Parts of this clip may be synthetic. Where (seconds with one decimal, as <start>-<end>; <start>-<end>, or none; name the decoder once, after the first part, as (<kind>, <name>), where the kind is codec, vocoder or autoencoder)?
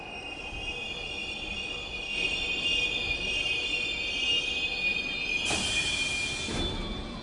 none